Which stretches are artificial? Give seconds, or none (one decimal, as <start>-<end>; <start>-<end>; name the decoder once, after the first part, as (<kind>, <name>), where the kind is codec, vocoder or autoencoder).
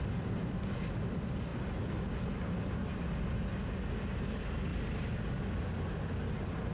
none